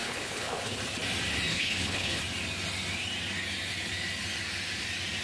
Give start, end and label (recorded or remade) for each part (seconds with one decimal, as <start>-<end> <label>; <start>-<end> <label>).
0.0-0.8 remade; 0.8-1.5 recorded; 1.5-2.2 remade; 2.2-5.2 recorded